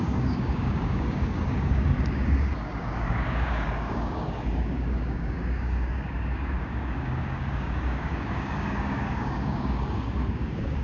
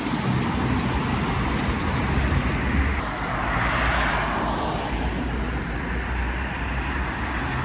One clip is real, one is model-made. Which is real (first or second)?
second